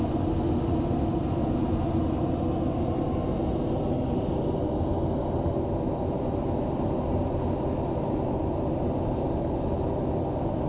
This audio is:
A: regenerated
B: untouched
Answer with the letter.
B